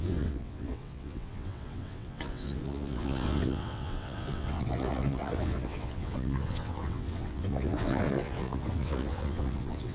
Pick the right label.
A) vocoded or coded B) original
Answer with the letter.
A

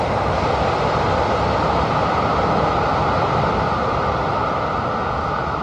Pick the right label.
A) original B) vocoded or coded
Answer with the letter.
A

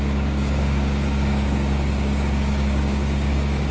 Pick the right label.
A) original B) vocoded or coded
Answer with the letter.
B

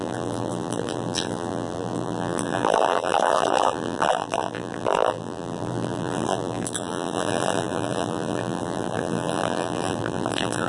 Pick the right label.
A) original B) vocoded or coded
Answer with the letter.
B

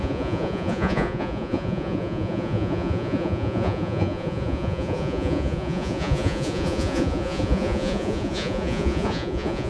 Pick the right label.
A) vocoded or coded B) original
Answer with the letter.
A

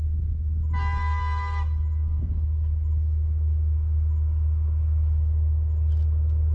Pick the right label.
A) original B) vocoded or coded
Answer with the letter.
A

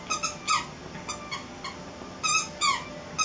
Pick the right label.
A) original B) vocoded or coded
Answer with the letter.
A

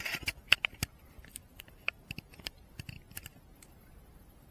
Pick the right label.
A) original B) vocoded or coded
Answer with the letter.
B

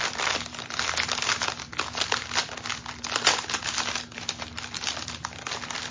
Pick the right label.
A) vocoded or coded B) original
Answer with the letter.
B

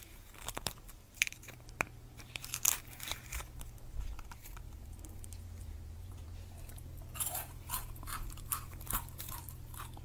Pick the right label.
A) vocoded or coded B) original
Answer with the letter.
A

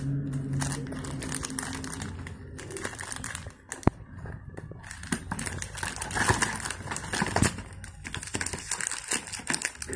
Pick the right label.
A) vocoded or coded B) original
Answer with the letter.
B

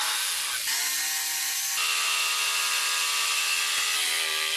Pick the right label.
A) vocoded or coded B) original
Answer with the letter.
B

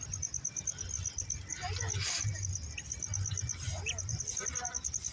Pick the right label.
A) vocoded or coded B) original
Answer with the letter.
A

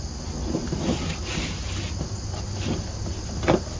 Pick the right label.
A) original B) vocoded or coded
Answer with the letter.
A